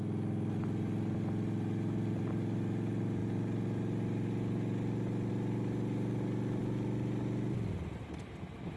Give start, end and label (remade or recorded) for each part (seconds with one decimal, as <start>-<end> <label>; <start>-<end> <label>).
0.0-8.8 recorded